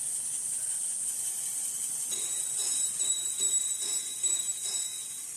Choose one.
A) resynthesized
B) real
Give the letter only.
A